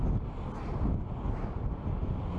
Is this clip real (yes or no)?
yes